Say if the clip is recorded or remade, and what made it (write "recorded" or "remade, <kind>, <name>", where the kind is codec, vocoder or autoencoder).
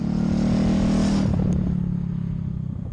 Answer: recorded